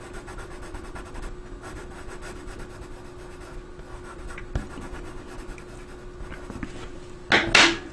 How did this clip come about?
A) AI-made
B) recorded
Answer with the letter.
B